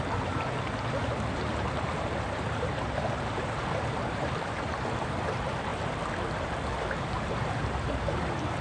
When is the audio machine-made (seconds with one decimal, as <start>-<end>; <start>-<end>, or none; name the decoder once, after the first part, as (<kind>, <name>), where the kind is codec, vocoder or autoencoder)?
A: 0.0-5.7 (vocoder, BigVGAN v2); 6.7-8.6